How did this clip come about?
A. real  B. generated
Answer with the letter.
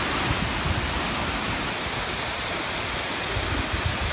A